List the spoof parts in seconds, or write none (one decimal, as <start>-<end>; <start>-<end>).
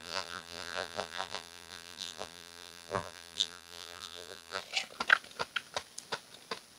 0.0-4.6